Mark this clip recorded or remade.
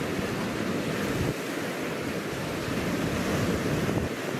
recorded